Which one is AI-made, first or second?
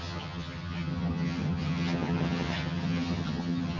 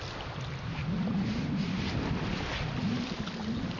first